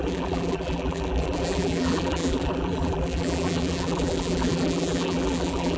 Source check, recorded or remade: remade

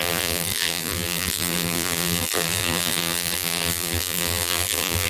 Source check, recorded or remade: remade